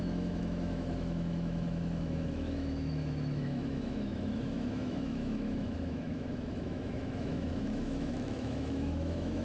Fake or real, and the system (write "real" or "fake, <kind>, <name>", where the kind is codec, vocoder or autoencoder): fake, autoencoder, DAC-VAE